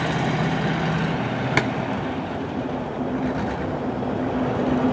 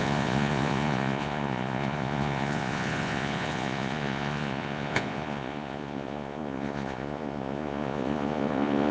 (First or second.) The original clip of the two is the first